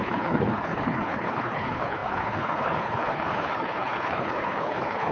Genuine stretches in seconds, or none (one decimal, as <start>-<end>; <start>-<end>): none